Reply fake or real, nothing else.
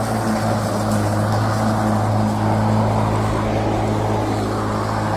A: real